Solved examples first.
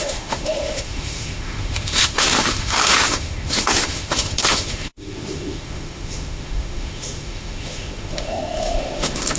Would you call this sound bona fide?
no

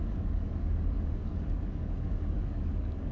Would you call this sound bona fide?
no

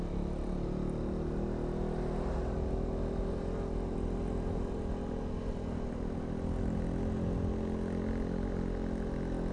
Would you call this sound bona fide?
yes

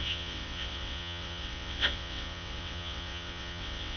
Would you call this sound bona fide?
no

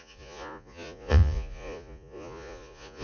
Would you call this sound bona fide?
no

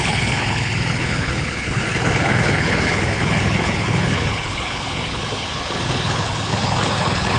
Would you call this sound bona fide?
no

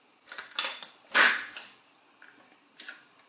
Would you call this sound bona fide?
yes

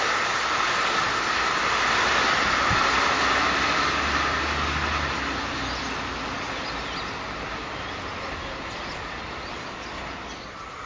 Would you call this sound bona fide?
yes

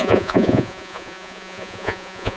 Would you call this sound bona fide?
no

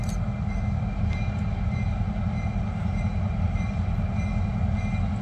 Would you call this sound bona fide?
yes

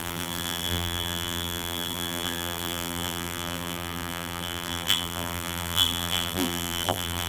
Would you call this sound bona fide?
no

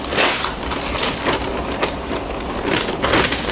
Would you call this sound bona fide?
no